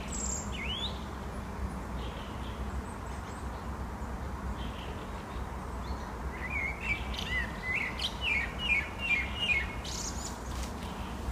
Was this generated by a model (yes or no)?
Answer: no